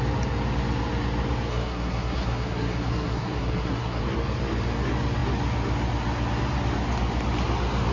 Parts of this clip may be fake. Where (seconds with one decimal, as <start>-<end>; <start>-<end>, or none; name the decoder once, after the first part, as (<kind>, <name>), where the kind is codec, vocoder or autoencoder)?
1.5-4.0 (codec, SNAC)